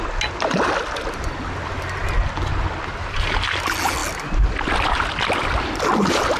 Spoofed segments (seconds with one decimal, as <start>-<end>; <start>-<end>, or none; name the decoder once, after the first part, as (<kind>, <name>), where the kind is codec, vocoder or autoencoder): none